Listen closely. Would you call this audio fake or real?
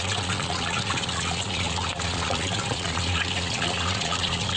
fake